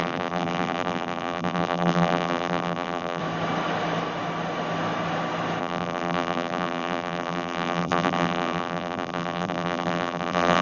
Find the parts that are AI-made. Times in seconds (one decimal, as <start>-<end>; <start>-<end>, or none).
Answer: 0.0-3.2; 5.6-10.6